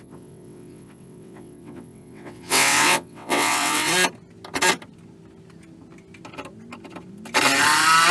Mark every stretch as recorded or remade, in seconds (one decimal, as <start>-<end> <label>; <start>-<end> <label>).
0.0-3.9 remade; 3.9-8.1 recorded